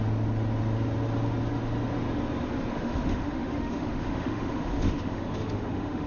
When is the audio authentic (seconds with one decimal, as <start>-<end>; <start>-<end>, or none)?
0.0-2.7